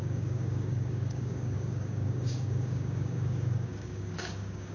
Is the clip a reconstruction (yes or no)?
yes